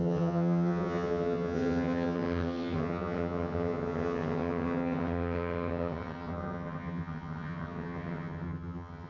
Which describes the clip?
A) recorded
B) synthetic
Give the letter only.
B